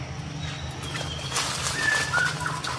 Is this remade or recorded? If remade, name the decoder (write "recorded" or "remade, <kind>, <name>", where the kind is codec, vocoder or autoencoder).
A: recorded